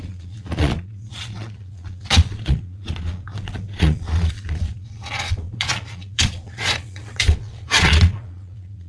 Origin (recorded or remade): remade